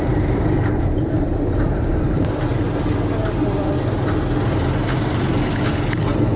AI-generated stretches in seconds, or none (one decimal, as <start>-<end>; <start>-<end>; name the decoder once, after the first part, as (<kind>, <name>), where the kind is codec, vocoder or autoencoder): 0.0-2.5 (vocoder, BigVGAN v2)